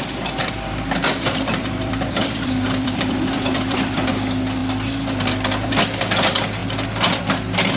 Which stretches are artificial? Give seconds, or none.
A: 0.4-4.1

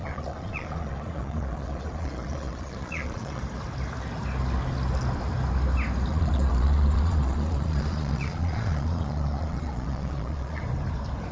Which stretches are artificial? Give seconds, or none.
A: 0.0-3.4; 6.1-10.6

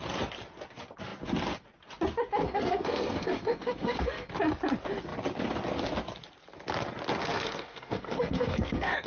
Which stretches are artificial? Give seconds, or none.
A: 2.4-4.3; 7.2-9.1

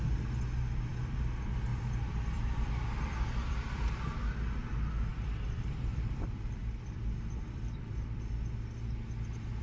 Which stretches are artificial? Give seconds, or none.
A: 1.7-4.0; 5.1-8.3

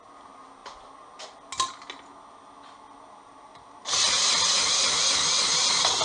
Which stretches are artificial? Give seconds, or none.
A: none